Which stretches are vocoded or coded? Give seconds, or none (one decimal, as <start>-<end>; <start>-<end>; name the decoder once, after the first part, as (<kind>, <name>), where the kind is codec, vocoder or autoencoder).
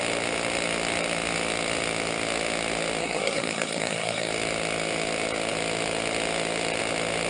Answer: 3.0-4.3 (codec, SNAC)